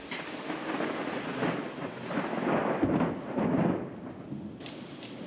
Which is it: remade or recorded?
recorded